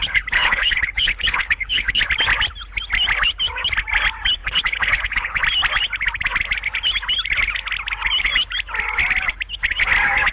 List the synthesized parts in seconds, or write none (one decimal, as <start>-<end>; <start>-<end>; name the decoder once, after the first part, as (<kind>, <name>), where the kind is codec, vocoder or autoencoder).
0.0-2.0 (codec, HILCodec); 4.4-5.4